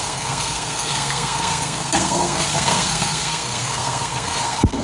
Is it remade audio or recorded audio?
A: remade